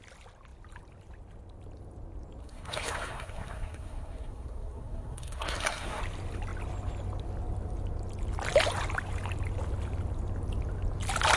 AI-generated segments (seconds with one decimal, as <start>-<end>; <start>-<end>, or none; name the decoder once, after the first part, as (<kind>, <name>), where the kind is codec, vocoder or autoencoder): 2.4-6.0 (codec, SNAC)